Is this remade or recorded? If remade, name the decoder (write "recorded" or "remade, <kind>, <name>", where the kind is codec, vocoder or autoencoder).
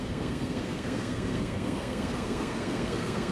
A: remade, codec, SNAC